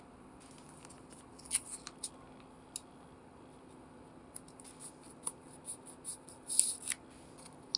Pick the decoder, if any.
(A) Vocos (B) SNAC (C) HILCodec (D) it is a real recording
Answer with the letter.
D